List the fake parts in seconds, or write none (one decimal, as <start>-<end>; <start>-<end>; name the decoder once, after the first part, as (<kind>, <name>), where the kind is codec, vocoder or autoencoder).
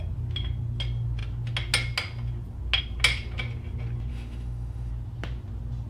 4.1-4.9 (autoencoder, DAC-VAE)